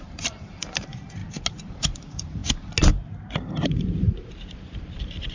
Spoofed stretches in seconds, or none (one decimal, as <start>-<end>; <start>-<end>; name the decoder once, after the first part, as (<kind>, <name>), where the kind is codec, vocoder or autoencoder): 0.0-1.2 (vocoder, BigVGAN v2); 1.7-2.4; 3.5-5.3